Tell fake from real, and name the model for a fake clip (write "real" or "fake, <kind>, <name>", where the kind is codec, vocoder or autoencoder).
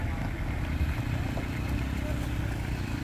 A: real